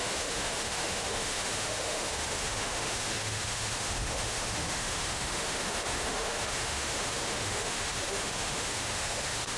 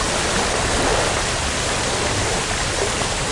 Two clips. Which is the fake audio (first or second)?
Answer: first